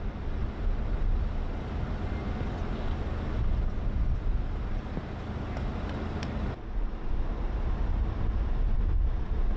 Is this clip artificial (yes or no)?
no